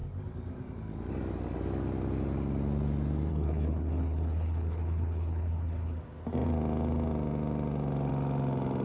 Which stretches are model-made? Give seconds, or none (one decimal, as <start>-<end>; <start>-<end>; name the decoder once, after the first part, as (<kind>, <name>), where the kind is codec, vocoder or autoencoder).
3.3-6.0 (codec, HILCodec)